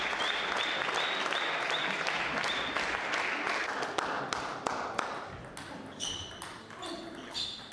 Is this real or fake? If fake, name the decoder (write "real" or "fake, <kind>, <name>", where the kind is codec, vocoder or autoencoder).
real